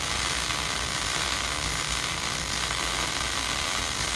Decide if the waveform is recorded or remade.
remade